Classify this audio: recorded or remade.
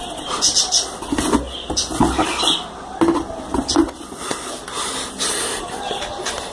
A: recorded